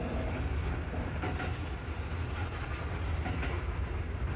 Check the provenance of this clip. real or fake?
real